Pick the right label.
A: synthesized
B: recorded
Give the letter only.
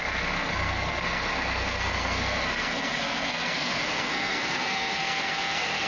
A